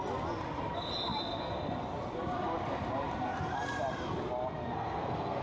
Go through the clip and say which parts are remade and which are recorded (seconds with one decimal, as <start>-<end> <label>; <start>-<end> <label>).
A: 0.0-4.7 recorded; 4.7-5.4 remade